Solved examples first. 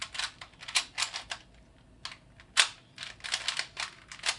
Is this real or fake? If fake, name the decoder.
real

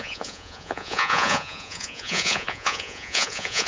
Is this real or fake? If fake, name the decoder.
fake, vocoder, Vocos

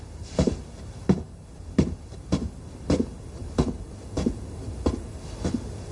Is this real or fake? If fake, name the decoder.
real